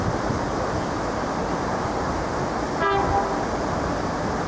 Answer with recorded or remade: recorded